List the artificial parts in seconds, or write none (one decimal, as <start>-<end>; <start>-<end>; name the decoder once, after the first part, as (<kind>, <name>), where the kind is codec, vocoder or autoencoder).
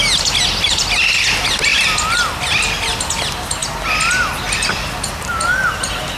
none